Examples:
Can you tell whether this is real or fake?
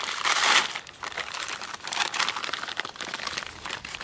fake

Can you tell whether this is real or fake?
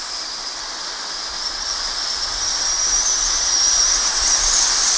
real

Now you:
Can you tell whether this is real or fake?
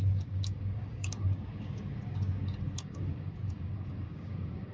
fake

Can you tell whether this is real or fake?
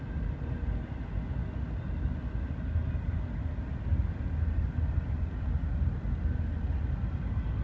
real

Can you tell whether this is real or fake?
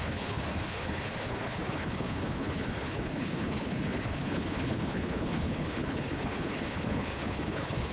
fake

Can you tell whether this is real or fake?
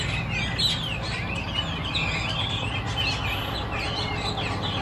real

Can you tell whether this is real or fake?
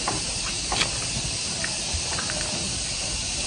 real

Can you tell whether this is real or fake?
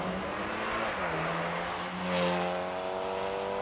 real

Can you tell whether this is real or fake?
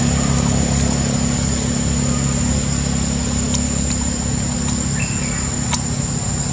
real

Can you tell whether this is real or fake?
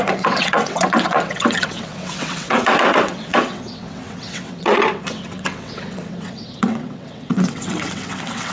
fake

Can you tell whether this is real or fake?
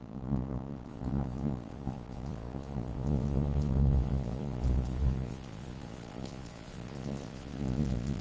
fake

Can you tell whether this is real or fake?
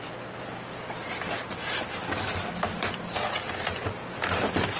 real